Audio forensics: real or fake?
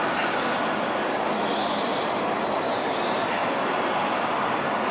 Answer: real